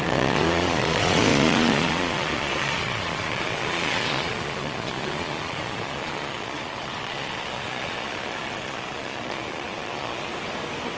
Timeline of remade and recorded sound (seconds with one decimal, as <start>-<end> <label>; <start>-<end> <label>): 0.0-10.3 remade; 10.3-11.0 recorded